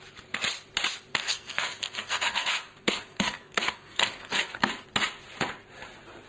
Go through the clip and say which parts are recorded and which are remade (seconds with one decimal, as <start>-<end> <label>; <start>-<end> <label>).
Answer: 0.0-1.1 recorded; 1.1-4.7 remade; 4.7-6.3 recorded

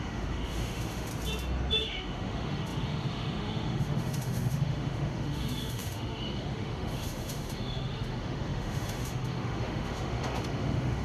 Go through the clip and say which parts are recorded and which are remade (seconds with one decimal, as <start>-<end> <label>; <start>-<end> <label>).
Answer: 0.0-1.1 remade; 1.1-1.7 recorded; 1.7-11.0 remade

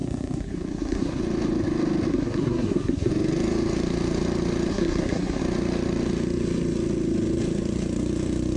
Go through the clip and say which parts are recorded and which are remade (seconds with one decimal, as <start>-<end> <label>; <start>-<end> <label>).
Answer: 0.0-1.2 remade; 1.2-2.1 recorded; 2.1-3.1 remade; 3.1-4.7 recorded; 4.7-5.4 remade; 5.4-8.6 recorded

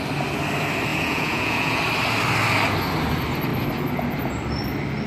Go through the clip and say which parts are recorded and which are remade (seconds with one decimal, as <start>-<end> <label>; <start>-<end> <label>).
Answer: 0.0-0.9 recorded; 0.9-1.8 remade; 1.8-5.1 recorded